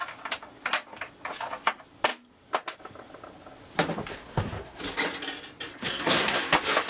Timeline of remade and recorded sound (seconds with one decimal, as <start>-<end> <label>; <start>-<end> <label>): 0.0-4.1 recorded; 4.1-4.8 remade; 4.8-5.7 recorded; 5.7-6.4 remade; 6.4-6.9 recorded